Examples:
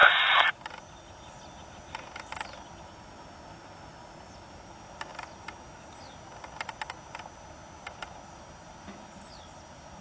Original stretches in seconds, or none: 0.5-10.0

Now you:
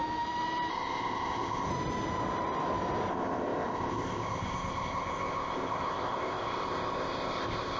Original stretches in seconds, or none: 0.0-0.7; 1.7-3.1

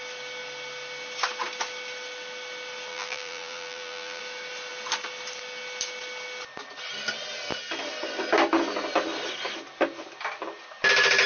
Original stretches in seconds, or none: 0.0-2.9; 4.2-11.3

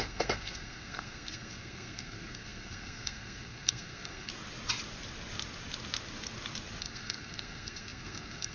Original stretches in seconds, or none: 4.3-6.8

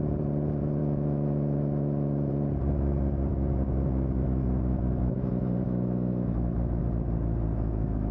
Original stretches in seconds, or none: 0.0-0.8; 2.3-3.3; 6.8-8.1

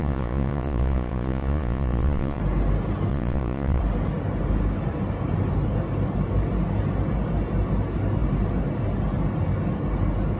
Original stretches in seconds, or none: 2.4-3.1; 3.8-10.4